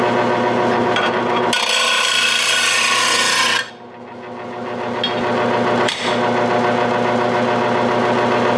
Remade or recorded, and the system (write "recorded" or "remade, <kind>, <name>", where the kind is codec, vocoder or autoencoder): recorded